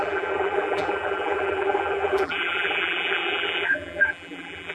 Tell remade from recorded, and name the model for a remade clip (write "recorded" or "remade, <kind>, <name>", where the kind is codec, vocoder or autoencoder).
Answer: remade, vocoder, BigVGAN v2